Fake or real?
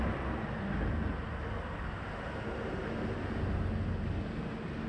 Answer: real